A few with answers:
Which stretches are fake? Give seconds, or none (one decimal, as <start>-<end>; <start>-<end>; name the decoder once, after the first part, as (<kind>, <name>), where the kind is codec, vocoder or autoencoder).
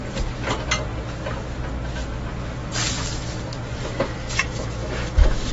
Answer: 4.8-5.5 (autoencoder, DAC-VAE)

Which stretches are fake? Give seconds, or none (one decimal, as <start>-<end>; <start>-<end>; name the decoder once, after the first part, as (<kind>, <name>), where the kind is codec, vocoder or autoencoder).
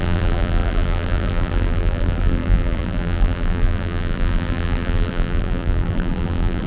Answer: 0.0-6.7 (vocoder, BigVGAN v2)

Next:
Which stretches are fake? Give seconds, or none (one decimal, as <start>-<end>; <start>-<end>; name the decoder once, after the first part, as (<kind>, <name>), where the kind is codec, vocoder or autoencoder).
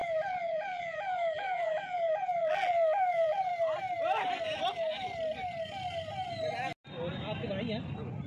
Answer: 0.0-3.5 (vocoder, BigVGAN v2)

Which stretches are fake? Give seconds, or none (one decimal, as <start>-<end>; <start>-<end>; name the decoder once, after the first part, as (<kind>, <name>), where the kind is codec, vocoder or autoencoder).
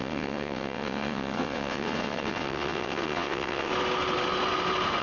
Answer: 0.0-3.7 (vocoder, WaveNeXt)